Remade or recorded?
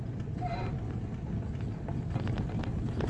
recorded